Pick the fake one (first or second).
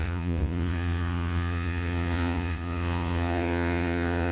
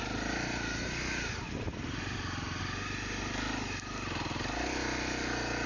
first